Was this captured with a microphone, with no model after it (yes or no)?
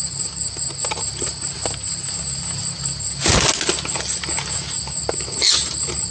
yes